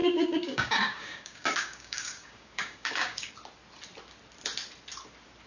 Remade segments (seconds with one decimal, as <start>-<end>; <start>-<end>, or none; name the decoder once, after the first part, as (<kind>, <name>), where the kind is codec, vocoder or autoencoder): 0.0-3.3 (codec, DAC)

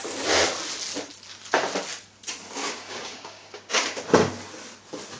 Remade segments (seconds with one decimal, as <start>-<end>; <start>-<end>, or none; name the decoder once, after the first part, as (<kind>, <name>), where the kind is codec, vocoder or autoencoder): 2.6-4.0 (codec, DAC)

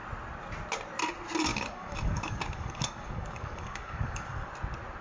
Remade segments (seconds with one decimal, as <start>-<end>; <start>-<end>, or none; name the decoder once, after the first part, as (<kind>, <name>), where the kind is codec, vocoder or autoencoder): 1.5-4.5 (codec, DAC)

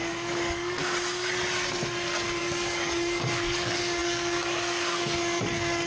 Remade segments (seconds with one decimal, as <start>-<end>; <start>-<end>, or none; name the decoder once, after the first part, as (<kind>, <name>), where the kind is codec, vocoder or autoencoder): 0.0-0.8 (codec, DAC); 2.4-5.9